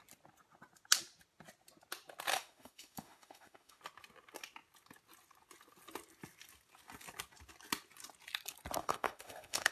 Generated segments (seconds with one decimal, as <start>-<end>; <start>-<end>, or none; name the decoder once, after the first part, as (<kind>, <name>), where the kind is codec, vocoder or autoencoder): 2.3-3.8 (autoencoder, DAC-VAE); 8.8-9.7